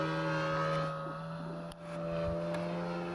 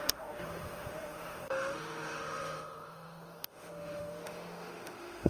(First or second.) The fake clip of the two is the second